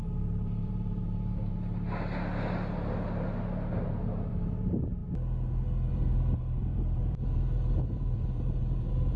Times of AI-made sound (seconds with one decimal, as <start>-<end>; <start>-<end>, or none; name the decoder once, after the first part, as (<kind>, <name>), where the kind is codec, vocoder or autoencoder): 0.0-1.5 (vocoder, BigVGAN v2); 4.3-5.0; 5.9-9.2